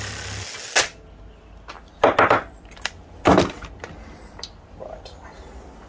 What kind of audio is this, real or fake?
real